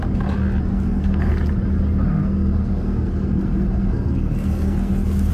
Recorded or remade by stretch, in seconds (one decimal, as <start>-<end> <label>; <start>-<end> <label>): 0.0-0.7 recorded; 0.7-1.3 remade; 1.3-2.1 recorded; 2.1-5.3 remade